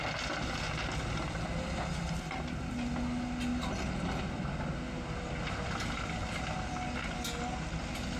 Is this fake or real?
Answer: real